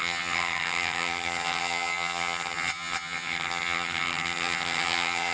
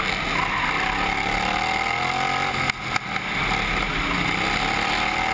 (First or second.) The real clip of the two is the second